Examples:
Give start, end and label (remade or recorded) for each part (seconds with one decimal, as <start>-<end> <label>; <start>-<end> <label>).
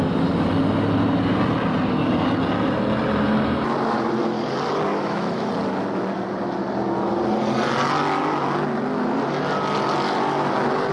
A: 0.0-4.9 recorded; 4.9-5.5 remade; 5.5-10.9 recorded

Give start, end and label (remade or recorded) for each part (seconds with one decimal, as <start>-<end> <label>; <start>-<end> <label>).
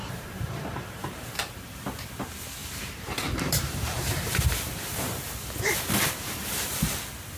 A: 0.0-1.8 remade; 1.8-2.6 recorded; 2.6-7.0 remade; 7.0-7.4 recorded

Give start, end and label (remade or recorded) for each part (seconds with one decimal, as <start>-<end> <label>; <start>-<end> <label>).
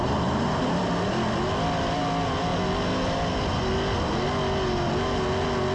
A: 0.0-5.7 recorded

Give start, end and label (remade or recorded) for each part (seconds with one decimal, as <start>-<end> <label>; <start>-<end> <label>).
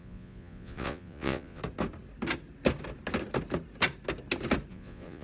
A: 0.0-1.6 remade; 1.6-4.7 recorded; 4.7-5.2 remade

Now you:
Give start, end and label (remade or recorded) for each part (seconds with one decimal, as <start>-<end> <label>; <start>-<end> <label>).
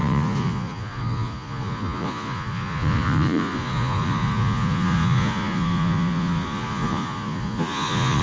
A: 0.0-8.2 remade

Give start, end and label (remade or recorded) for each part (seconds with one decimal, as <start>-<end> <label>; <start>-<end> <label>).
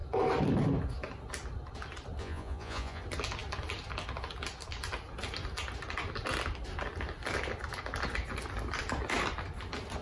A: 0.0-2.2 recorded; 2.2-3.0 remade; 3.0-10.0 recorded